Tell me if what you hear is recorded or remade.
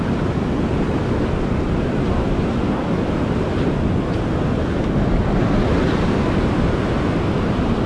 recorded